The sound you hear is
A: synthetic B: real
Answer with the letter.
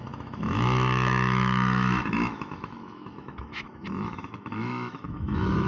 A